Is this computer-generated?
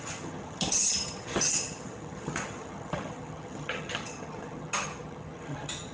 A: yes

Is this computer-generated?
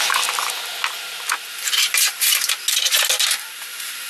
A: no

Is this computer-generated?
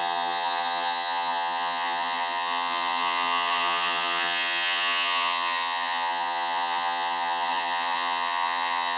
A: yes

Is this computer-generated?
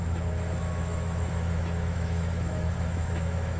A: yes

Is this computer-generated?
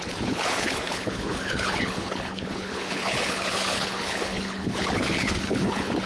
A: yes